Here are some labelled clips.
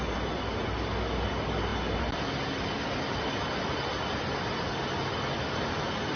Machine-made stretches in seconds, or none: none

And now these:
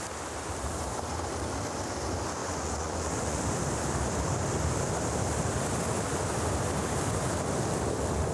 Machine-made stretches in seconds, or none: 2.4-3.4 (vocoder, Vocos)

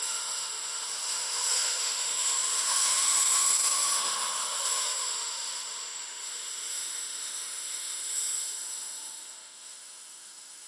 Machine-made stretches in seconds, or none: 0.0-10.7 (autoencoder, DAC-VAE)